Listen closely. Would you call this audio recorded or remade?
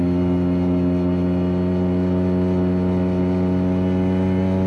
recorded